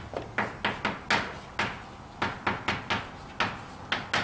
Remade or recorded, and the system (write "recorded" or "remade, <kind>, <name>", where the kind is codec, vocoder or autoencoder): recorded